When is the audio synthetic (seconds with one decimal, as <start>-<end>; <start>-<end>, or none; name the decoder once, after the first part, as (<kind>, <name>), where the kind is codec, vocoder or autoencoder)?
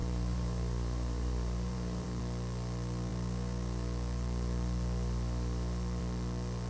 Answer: 0.0-2.2 (vocoder, BigVGAN v2)